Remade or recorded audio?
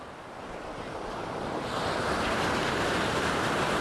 recorded